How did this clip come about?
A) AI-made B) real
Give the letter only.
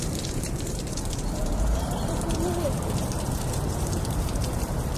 A